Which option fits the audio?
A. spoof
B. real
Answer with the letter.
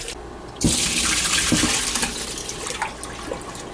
B